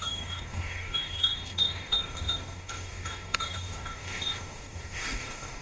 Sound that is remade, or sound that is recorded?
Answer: remade